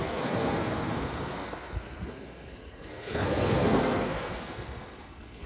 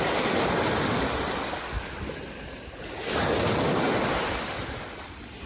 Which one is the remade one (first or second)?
first